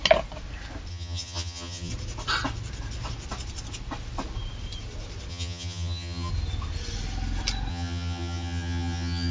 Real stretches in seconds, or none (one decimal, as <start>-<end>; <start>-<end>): 0.0-0.9; 1.9-5.3; 6.3-7.7